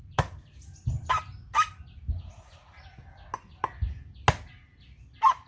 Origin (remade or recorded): recorded